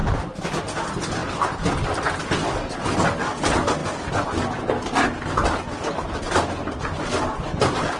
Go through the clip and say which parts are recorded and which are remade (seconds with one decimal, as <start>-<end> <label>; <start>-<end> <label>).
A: 0.0-8.0 recorded